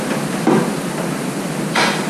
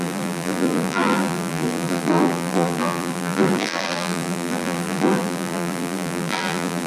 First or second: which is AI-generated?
second